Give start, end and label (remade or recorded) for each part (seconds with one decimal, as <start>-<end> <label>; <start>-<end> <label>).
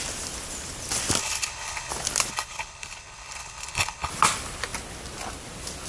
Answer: 0.0-1.2 recorded; 1.2-1.9 remade; 1.9-2.3 recorded; 2.3-4.1 remade; 4.1-5.9 recorded